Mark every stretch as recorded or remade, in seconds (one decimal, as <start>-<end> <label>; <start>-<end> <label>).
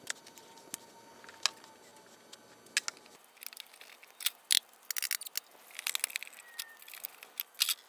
0.0-7.9 recorded